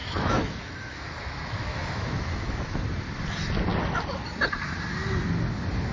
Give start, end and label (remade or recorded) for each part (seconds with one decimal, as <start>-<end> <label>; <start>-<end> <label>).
0.0-2.8 remade; 2.8-5.9 recorded

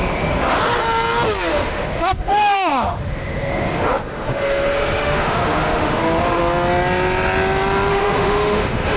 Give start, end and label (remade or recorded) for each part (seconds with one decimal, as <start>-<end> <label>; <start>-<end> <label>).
0.0-0.6 remade; 0.6-1.5 recorded; 1.5-6.4 remade; 6.4-7.9 recorded; 7.9-9.0 remade

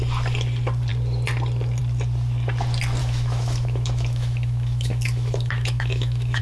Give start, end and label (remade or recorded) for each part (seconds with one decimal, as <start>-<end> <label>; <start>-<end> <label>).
0.0-3.0 recorded; 3.0-6.4 remade

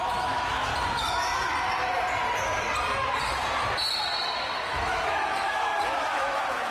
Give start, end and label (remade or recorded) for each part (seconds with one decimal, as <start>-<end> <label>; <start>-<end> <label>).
0.0-0.7 remade; 0.7-4.7 recorded; 4.7-6.7 remade

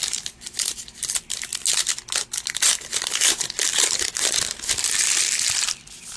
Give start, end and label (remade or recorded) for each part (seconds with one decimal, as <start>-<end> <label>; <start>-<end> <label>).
0.0-6.2 recorded

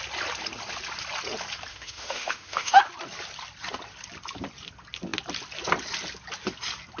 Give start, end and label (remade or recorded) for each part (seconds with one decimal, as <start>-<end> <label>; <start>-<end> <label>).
0.0-1.7 recorded; 1.7-2.8 remade; 2.8-7.0 recorded